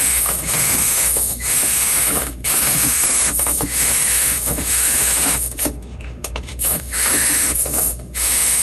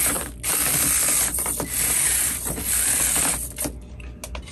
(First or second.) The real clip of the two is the second